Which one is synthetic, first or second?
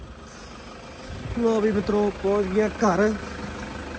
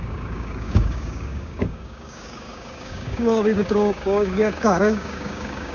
second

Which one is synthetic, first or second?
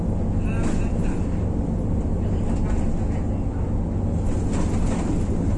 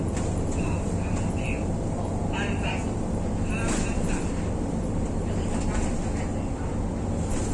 second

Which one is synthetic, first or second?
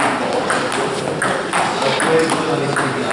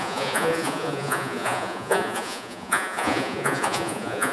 second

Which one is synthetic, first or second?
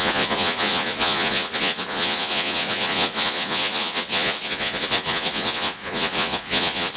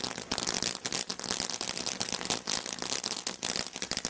first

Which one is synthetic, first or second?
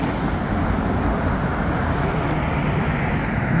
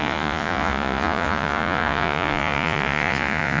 second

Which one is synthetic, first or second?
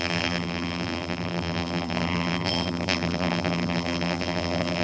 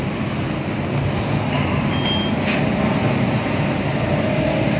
first